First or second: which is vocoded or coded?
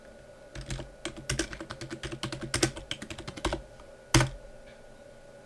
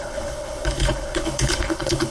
second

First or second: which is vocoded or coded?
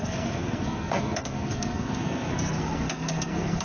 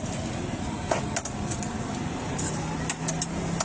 first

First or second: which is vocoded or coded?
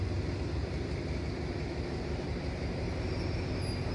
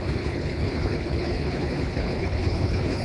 second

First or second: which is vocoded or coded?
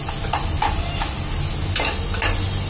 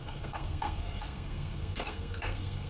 second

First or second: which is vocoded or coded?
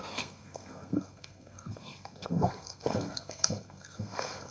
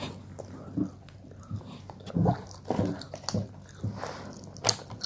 first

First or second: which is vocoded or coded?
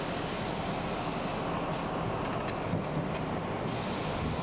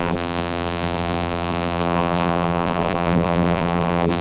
second